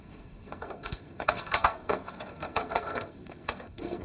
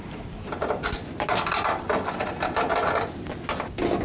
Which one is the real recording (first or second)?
second